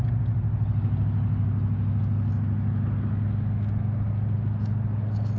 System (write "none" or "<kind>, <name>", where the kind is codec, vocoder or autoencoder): none